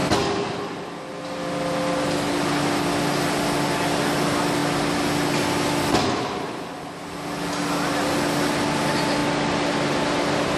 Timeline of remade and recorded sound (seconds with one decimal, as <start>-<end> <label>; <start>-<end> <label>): 0.0-10.6 recorded